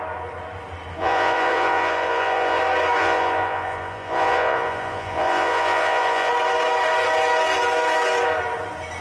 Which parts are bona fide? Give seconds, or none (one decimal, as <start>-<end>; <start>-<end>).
0.0-1.0; 2.6-3.0; 6.3-9.0

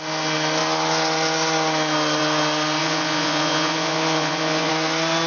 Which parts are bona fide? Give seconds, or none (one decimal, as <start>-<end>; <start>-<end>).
0.0-2.8; 4.7-5.3